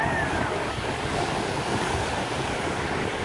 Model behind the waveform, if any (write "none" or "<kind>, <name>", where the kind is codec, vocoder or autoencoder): codec, DAC